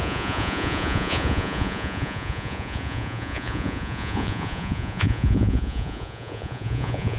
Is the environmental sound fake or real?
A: fake